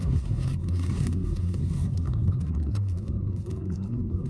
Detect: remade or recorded remade